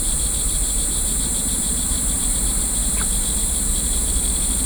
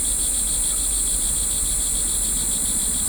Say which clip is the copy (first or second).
first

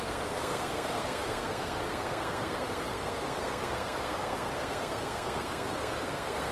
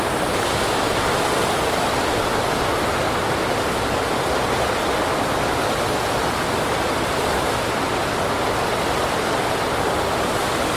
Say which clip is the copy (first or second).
first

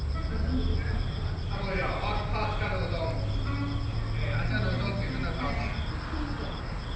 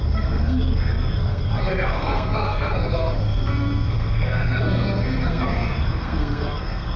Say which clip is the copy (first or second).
second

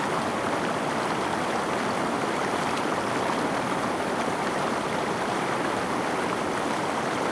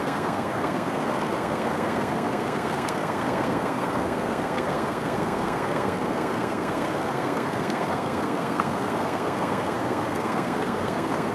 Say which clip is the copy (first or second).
second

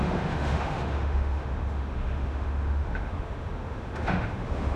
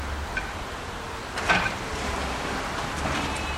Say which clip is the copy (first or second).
first